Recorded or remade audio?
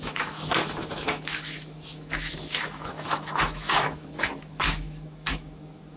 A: remade